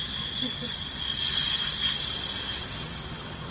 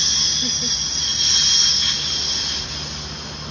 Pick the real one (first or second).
second